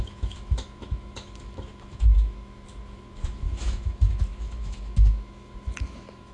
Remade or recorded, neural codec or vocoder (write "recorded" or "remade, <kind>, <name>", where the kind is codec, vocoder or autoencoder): remade, autoencoder, DAC-VAE